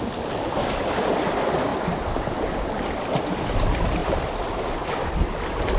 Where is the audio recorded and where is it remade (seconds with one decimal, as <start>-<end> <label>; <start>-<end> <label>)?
0.0-1.7 recorded; 1.7-2.4 remade; 2.4-4.0 recorded; 4.0-4.8 remade; 4.8-5.8 recorded